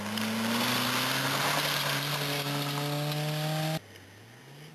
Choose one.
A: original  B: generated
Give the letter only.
A